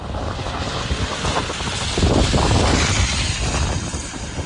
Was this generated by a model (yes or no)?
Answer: no